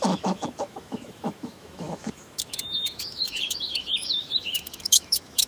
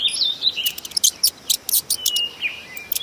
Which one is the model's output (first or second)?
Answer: first